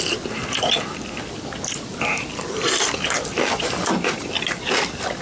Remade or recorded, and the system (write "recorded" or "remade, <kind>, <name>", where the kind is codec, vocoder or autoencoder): remade, vocoder, BigVGAN v2